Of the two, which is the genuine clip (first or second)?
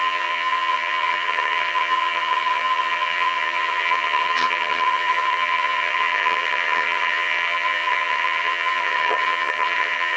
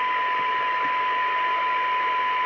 second